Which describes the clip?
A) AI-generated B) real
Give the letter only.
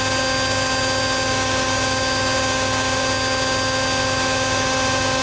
B